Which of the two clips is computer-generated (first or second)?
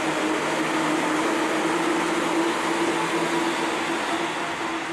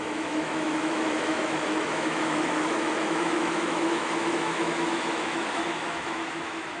second